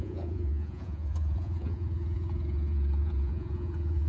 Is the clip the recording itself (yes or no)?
no